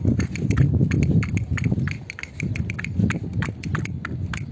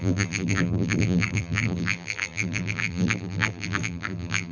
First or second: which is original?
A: first